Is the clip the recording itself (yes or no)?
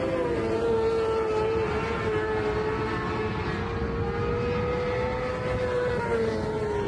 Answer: yes